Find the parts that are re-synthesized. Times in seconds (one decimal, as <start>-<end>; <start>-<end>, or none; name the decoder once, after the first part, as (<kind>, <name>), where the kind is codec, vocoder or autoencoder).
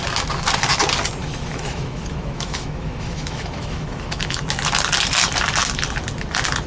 1.2-4.4 (autoencoder, DAC-VAE)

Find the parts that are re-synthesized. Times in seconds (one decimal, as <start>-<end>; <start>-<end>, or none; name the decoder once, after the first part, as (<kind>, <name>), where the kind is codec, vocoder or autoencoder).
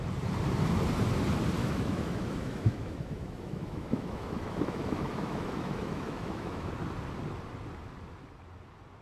1.6-6.7 (autoencoder, DAC-VAE)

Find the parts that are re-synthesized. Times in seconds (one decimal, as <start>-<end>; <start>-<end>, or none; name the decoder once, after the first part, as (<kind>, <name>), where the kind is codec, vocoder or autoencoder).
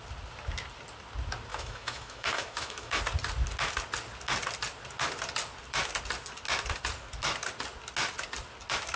1.5-3.0 (autoencoder, DAC-VAE)